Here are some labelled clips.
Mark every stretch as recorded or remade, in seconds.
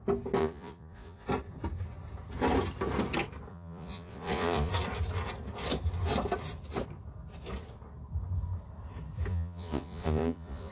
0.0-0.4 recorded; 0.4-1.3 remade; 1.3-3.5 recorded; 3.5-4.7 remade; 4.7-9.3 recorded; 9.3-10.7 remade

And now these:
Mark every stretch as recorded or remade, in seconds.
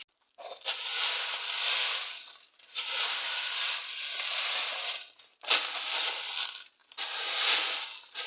0.0-8.3 recorded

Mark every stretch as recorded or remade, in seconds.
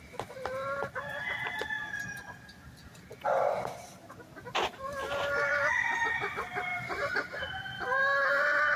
0.0-5.0 recorded; 5.0-6.0 remade; 6.0-8.8 recorded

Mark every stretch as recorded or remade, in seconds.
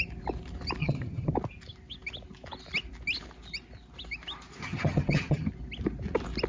0.0-0.8 recorded; 0.8-1.3 remade; 1.3-4.6 recorded; 4.6-5.5 remade; 5.5-6.5 recorded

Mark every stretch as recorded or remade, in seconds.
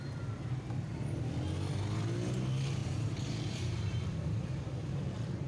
0.0-2.8 recorded; 2.8-5.0 remade; 5.0-5.5 recorded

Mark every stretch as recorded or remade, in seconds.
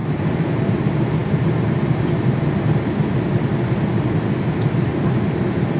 0.0-5.8 recorded